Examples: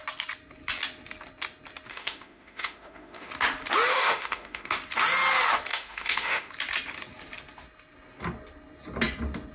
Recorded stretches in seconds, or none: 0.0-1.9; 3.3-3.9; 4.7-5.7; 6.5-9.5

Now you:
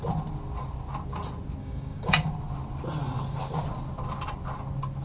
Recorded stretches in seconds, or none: 0.0-1.6; 2.3-5.0

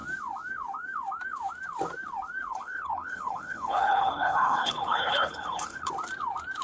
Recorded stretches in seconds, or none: 0.0-2.5; 5.9-6.6

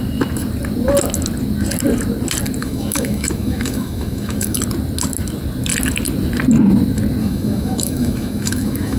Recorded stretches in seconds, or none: 0.0-2.6; 4.6-7.2